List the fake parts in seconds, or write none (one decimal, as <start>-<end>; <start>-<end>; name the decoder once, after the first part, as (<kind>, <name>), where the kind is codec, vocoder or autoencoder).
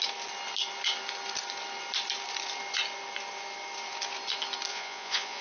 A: 4.7-5.4 (vocoder, Vocos)